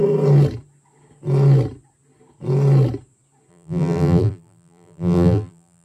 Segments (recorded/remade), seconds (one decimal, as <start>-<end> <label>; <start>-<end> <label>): 0.0-3.5 recorded; 3.5-5.8 remade